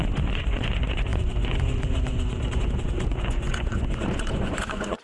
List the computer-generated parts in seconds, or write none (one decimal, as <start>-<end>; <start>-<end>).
0.0-5.0